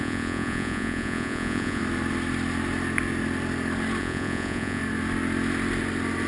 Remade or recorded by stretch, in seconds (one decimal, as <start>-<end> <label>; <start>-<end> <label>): 0.0-1.8 remade; 1.8-4.0 recorded; 4.0-4.8 remade; 4.8-6.3 recorded